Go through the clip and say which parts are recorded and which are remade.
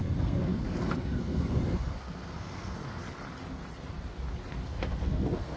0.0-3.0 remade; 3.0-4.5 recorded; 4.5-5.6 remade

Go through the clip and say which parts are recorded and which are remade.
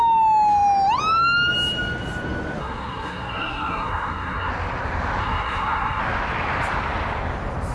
0.0-2.6 recorded; 2.6-4.5 remade; 4.5-5.2 recorded; 5.2-6.0 remade; 6.0-7.7 recorded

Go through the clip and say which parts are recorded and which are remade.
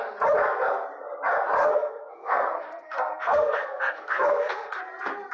0.0-1.6 recorded; 1.6-4.8 remade; 4.8-5.3 recorded